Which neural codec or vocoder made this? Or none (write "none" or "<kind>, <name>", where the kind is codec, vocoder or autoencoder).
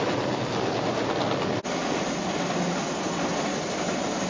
none